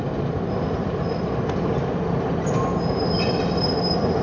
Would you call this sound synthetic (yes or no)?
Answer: no